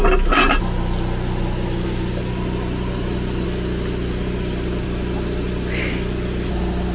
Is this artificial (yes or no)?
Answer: no